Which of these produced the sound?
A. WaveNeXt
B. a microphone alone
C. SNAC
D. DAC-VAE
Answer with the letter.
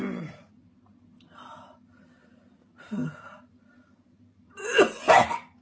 B